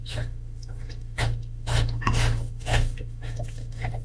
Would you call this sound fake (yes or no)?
yes